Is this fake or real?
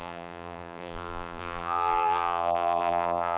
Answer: fake